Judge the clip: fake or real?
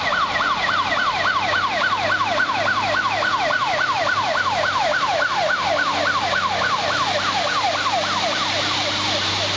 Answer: real